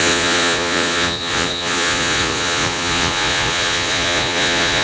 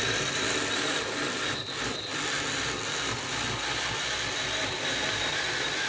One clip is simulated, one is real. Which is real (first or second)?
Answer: second